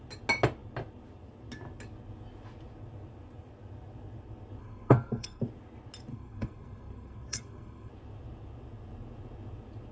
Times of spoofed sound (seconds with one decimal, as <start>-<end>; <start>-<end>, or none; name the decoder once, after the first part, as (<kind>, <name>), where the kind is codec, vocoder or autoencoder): 4.6-5.4 (codec, SNAC); 6.1-7.9